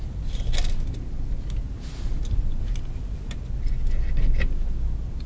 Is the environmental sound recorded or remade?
recorded